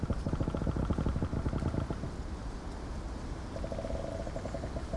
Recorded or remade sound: recorded